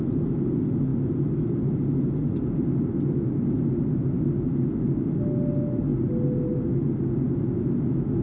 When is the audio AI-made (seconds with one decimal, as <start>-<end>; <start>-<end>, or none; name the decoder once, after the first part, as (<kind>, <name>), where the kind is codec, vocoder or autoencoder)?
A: none